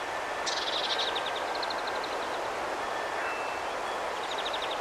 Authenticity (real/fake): real